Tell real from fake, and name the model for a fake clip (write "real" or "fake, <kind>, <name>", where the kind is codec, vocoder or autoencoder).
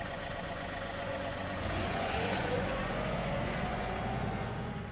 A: fake, vocoder, Vocos